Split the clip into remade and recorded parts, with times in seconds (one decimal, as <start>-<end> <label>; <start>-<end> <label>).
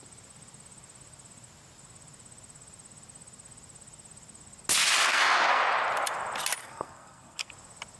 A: 0.0-5.0 recorded; 5.0-5.6 remade; 5.6-6.6 recorded; 6.6-7.5 remade; 7.5-8.0 recorded